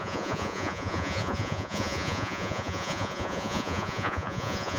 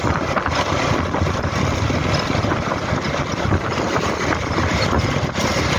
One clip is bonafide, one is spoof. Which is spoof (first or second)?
first